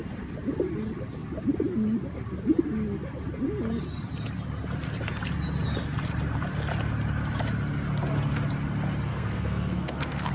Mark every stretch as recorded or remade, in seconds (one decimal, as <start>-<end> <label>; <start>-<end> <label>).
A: 0.0-9.1 recorded; 9.1-10.3 remade

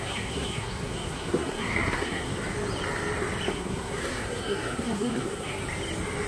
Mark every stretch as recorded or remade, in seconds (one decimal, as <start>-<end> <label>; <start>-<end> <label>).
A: 0.0-2.3 remade; 2.3-3.5 recorded; 3.5-5.6 remade; 5.6-6.3 recorded

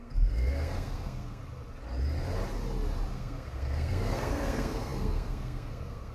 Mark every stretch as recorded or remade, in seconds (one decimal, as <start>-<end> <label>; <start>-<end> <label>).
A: 0.0-1.4 remade; 1.4-3.1 recorded; 3.1-6.1 remade

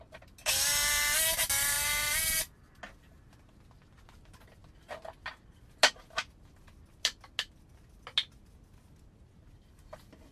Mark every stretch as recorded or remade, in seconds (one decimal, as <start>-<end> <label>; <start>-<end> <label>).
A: 0.0-10.3 recorded

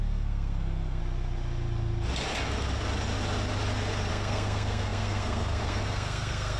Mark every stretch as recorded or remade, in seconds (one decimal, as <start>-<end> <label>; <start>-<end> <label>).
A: 0.0-1.0 remade; 1.0-4.1 recorded; 4.1-6.6 remade

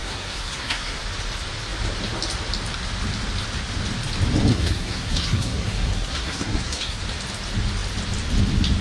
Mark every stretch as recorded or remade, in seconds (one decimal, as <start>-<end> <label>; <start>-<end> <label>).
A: 0.0-1.0 remade; 1.0-4.5 recorded; 4.5-7.0 remade; 7.0-8.8 recorded

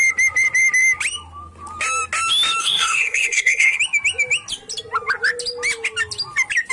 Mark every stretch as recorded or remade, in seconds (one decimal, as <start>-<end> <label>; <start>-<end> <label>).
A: 0.0-2.6 recorded; 2.6-3.8 remade; 3.8-6.7 recorded

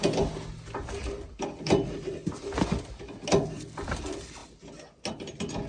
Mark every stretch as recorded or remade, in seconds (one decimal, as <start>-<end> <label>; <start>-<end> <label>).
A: 0.0-5.7 recorded